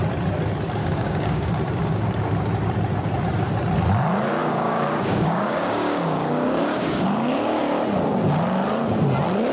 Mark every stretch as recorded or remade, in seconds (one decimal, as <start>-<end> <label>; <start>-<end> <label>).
0.0-0.8 recorded; 0.8-1.5 remade; 1.5-4.4 recorded; 4.4-7.6 remade; 7.6-9.5 recorded